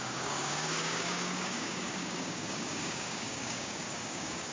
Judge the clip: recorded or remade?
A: remade